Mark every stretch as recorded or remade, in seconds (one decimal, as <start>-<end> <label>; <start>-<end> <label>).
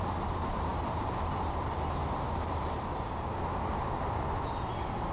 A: 0.0-0.7 recorded; 0.7-3.8 remade; 3.8-5.1 recorded